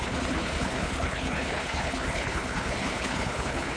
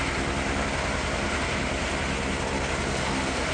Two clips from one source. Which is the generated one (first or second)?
first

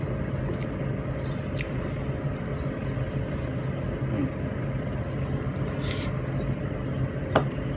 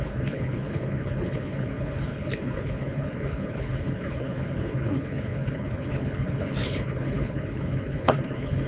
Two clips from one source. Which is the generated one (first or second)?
second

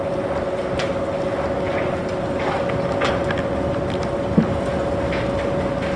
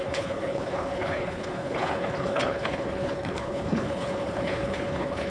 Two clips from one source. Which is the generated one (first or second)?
second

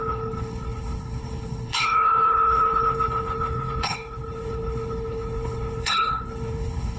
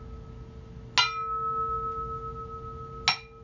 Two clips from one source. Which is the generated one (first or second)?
first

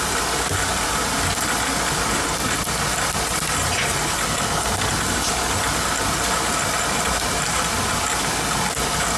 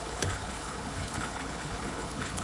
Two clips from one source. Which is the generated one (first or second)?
second